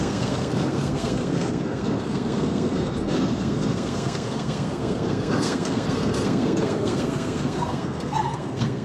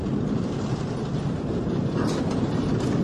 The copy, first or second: first